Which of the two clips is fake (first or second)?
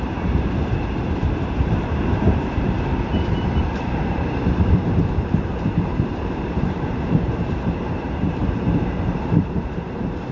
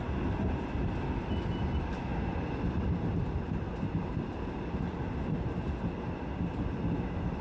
first